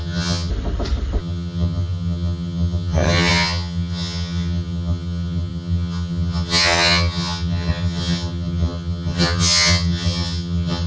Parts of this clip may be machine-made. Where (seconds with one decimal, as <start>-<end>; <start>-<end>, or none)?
0.0-0.5; 1.2-10.9